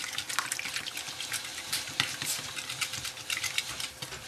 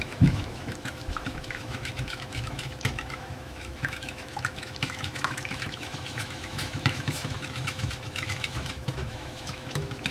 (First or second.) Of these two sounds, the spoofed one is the second